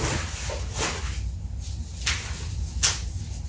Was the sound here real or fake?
real